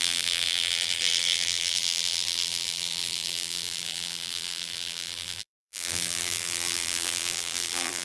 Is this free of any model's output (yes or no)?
no